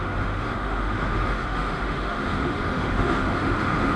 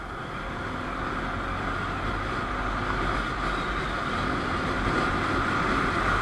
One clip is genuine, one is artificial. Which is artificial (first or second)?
first